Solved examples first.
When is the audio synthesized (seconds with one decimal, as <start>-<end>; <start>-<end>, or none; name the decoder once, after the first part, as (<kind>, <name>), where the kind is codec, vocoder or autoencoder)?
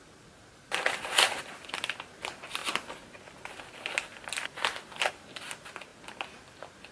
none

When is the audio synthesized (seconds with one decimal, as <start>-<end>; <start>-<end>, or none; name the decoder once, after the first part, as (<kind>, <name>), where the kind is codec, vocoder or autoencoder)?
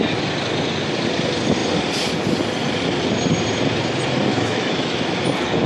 4.3-5.0 (autoencoder, DAC-VAE)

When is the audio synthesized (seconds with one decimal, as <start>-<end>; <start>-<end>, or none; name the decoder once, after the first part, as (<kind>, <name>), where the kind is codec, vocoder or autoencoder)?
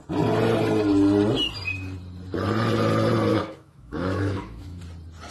3.3-4.8 (autoencoder, DAC-VAE)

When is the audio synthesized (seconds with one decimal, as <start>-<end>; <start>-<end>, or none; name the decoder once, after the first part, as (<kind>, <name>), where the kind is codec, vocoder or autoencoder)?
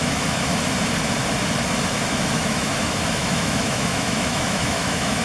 0.0-0.5 (autoencoder, DAC-VAE); 2.1-5.2